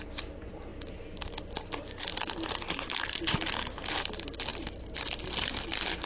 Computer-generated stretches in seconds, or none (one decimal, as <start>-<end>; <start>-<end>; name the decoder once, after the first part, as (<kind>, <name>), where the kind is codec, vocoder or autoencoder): none